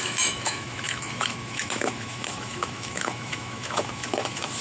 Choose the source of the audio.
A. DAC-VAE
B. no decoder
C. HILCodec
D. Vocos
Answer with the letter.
A